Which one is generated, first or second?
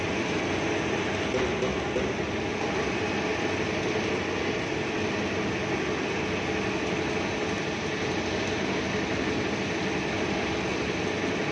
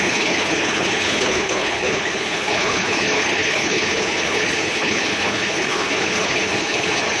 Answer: second